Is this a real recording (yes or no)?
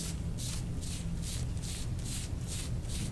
yes